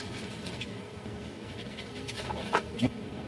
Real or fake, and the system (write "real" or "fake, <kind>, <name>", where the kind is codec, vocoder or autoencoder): fake, codec, SNAC